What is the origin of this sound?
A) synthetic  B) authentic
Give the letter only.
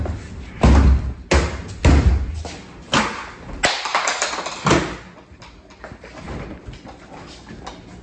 B